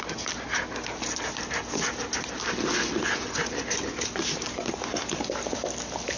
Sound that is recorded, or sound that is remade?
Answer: recorded